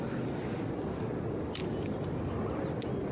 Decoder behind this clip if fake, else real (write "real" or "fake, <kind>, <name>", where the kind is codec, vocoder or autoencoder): real